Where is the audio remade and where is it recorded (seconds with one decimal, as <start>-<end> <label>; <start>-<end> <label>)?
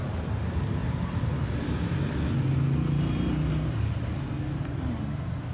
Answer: 0.0-5.5 recorded